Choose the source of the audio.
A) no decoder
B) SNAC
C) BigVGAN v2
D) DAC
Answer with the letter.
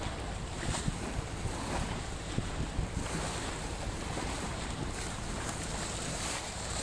C